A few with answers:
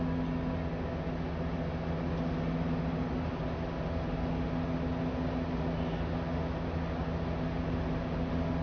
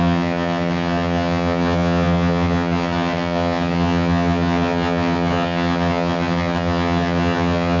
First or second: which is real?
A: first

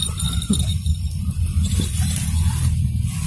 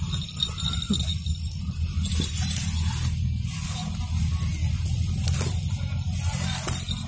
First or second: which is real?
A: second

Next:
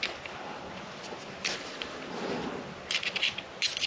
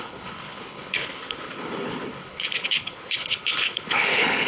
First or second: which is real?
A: first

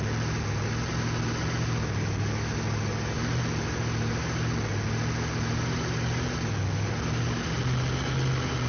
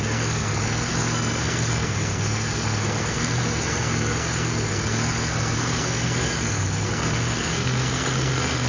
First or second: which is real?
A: first